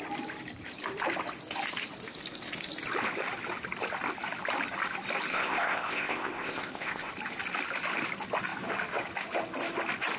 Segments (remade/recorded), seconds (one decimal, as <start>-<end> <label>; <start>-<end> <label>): 0.0-5.3 recorded; 5.3-7.1 remade; 7.1-10.2 recorded